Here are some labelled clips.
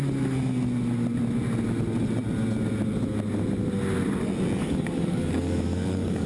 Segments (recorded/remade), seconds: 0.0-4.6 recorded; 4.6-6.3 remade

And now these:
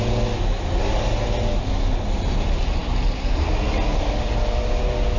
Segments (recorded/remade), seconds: 0.0-5.2 recorded

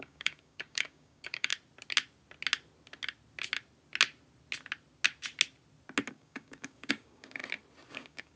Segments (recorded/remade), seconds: 0.0-1.5 remade; 1.5-6.1 recorded; 6.1-7.4 remade; 7.4-7.9 recorded; 7.9-8.4 remade

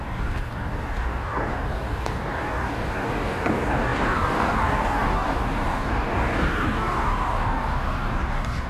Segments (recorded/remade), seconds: 0.0-8.7 remade